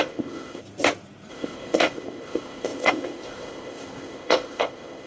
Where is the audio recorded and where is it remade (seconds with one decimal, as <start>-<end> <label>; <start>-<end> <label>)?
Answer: 0.0-0.6 remade; 0.6-1.3 recorded; 1.3-5.1 remade